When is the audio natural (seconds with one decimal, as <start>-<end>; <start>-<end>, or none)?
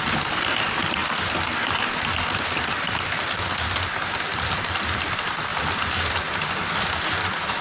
0.0-7.6